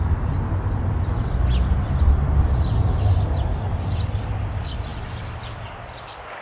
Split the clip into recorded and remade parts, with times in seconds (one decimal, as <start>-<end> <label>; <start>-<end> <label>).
0.0-6.4 recorded